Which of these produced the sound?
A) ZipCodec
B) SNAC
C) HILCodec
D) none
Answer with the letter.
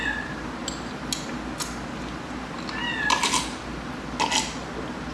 D